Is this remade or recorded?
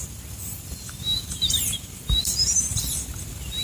recorded